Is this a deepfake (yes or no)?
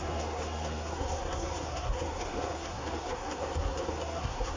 yes